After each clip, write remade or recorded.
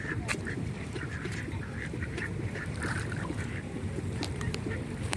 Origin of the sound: remade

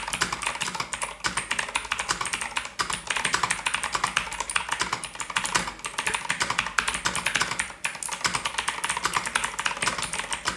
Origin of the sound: recorded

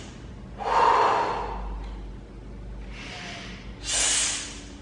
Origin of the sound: recorded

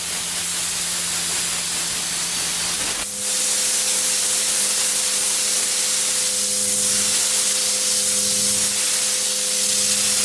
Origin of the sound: recorded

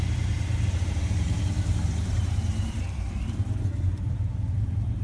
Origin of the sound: remade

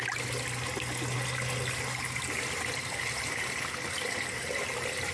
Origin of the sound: recorded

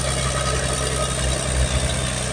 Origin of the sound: recorded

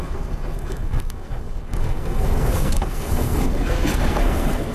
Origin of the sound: remade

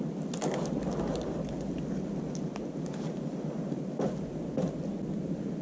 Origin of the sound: recorded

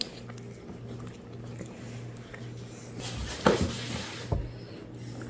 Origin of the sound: recorded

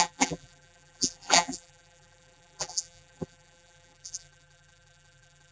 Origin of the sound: remade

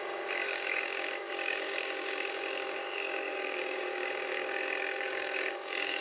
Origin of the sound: remade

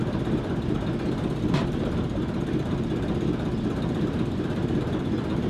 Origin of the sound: remade